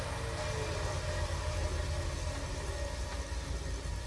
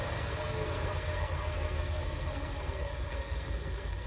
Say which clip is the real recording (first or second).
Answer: first